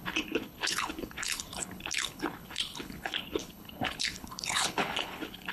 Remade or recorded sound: remade